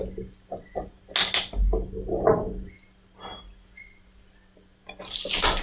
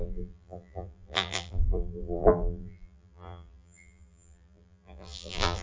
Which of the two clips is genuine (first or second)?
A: first